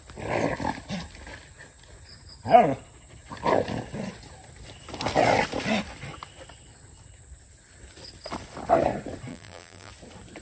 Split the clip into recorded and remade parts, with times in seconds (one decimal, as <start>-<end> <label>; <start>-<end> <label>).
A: 0.0-9.3 recorded; 9.3-9.9 remade; 9.9-10.4 recorded